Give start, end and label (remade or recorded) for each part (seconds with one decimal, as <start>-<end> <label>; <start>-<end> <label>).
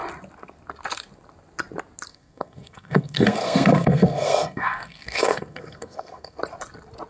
0.0-2.1 recorded; 2.1-6.4 remade; 6.4-7.1 recorded